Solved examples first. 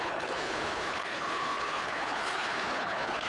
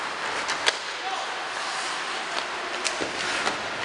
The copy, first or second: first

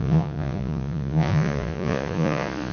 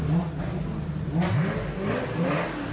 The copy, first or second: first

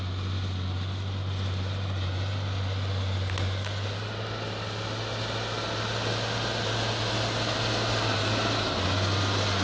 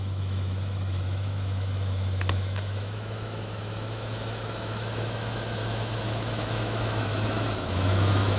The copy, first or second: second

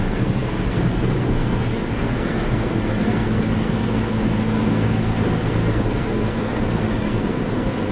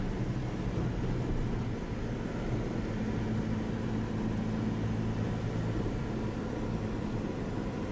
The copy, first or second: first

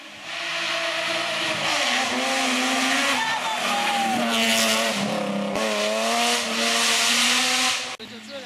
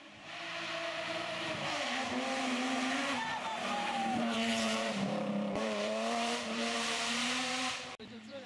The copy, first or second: second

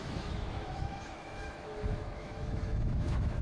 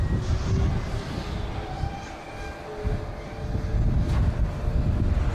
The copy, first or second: first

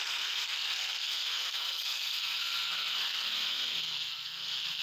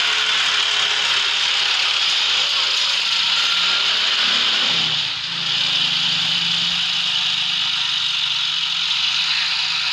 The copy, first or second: first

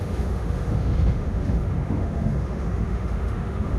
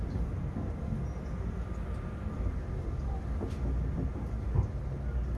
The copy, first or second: first